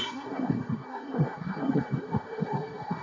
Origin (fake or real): fake